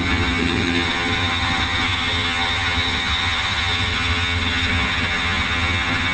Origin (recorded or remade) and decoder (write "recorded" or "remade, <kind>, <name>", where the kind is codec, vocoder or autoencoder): remade, vocoder, HiFi-GAN